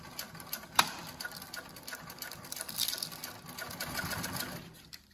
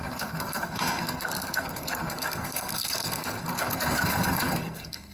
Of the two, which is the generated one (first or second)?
second